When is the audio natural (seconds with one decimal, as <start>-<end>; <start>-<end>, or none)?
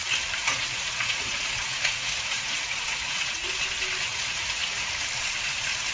0.0-0.4; 3.5-4.1; 4.9-5.9